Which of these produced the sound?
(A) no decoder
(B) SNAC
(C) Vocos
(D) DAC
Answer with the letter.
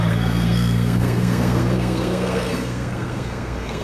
B